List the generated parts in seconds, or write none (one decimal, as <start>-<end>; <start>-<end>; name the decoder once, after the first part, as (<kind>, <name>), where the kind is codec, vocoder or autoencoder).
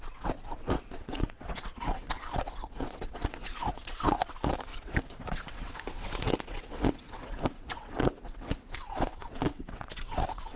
0.0-10.6 (vocoder, WaveNeXt)